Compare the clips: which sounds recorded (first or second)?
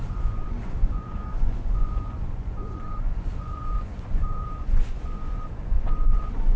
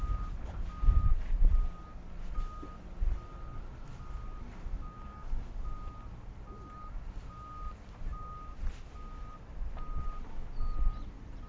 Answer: second